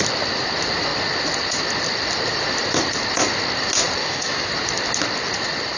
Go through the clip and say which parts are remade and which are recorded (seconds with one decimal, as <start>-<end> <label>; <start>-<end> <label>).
0.0-4.0 recorded; 4.0-4.5 remade; 4.5-5.8 recorded